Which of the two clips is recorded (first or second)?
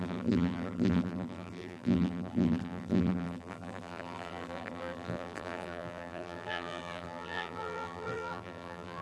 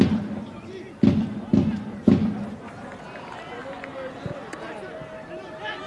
second